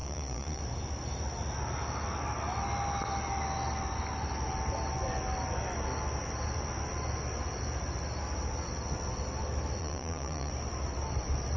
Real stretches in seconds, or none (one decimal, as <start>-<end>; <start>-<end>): 0.6-9.8; 10.5-11.6